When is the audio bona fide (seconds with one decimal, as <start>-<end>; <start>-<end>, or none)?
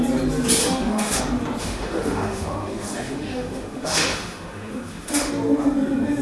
0.0-0.6; 1.2-1.6; 5.3-6.2